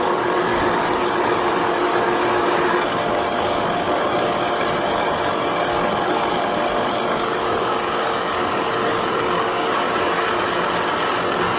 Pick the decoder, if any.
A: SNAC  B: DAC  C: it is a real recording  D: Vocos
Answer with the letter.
B